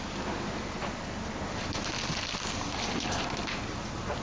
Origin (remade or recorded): recorded